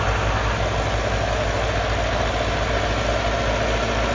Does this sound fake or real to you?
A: real